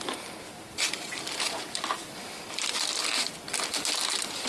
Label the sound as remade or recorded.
recorded